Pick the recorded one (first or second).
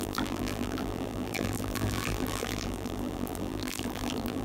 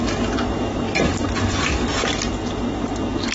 second